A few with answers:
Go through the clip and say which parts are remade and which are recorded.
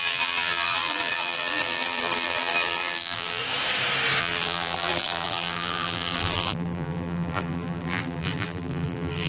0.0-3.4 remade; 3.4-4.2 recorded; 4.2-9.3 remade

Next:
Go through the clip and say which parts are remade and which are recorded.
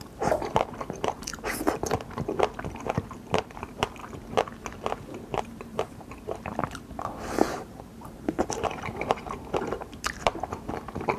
0.0-1.3 remade; 1.3-2.8 recorded; 2.8-4.0 remade; 4.0-5.4 recorded; 5.4-6.5 remade; 6.5-7.5 recorded; 7.5-11.2 remade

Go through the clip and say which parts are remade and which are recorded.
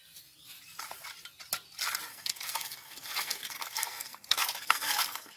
0.0-2.1 recorded; 2.1-5.4 remade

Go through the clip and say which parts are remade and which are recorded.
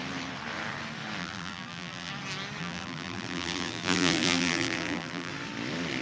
0.0-1.2 recorded; 1.2-2.1 remade; 2.1-2.6 recorded; 2.6-5.3 remade; 5.3-6.0 recorded